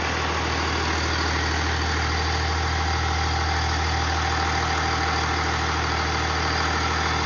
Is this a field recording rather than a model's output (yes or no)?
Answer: yes